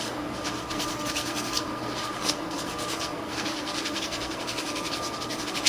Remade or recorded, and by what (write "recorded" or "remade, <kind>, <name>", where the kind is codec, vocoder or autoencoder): remade, codec, SNAC